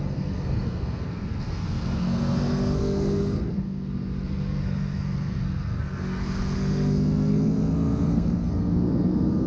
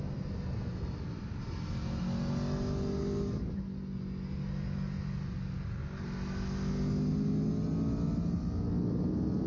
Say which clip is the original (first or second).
second